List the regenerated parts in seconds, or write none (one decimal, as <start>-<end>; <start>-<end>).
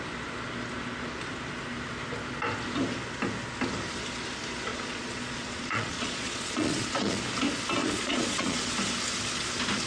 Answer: 4.7-7.2; 7.8-8.7